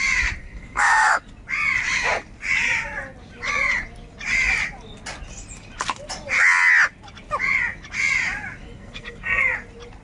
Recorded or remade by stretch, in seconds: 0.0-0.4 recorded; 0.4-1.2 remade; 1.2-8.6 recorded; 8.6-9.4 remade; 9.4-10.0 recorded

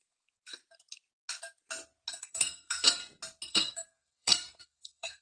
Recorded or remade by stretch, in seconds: 0.0-0.6 remade; 0.6-2.1 recorded; 2.1-3.0 remade; 3.0-3.5 recorded; 3.5-5.2 remade

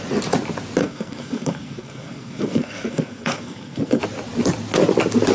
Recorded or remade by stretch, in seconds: 0.0-0.8 recorded; 0.8-4.0 remade; 4.0-5.3 recorded

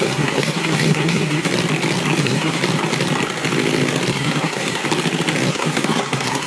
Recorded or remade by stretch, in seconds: 0.0-1.5 remade; 1.5-2.2 recorded; 2.2-2.6 remade; 2.6-4.1 recorded; 4.1-4.8 remade; 4.8-5.5 recorded; 5.5-6.5 remade

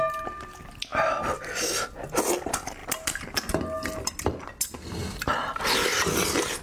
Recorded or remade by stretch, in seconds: 0.0-6.6 recorded

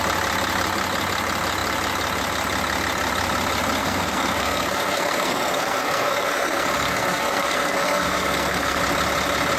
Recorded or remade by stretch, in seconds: 0.0-3.8 recorded; 3.8-8.8 remade; 8.8-9.6 recorded

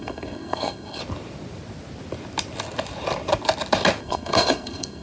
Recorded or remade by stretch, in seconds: 0.0-1.0 remade; 1.0-4.0 recorded; 4.0-5.0 remade

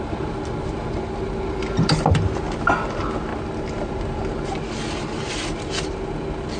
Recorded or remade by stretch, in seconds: 0.0-6.6 recorded